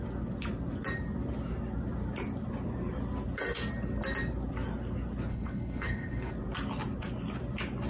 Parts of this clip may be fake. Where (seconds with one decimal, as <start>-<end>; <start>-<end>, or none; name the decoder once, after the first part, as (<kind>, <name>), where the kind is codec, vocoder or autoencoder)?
5.3-6.3 (codec, HILCodec)